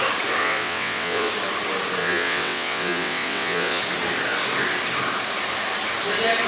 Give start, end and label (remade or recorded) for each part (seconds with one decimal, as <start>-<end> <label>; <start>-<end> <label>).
0.0-0.4 recorded; 0.4-1.3 remade; 1.3-2.0 recorded; 2.0-3.8 remade; 3.8-6.5 recorded